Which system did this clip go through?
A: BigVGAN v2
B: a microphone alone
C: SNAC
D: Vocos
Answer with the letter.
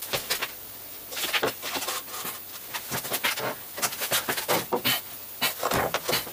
B